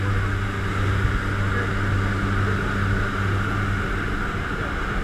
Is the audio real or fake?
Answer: real